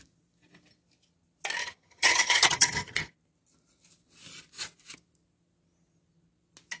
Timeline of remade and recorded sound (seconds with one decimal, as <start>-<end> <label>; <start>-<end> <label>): 0.0-1.6 recorded; 1.6-3.1 remade; 3.1-6.8 recorded